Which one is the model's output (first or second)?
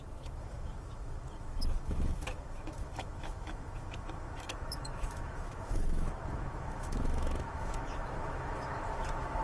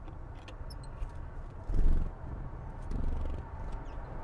first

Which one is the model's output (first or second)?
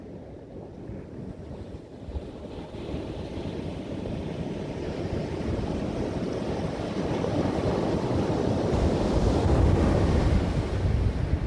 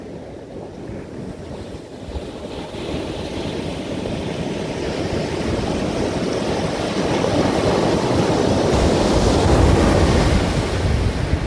first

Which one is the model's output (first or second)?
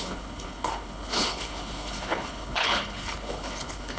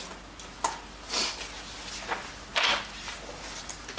first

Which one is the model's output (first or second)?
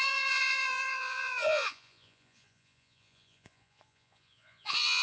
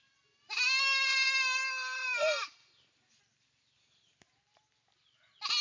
first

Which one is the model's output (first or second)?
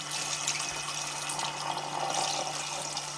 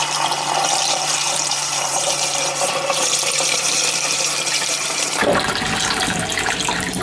second